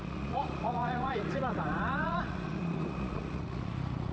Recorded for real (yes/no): no